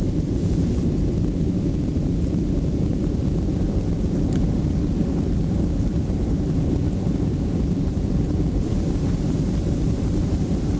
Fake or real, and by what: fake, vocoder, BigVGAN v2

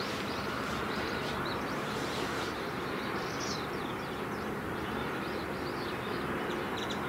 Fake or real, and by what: fake, vocoder, BigVGAN v2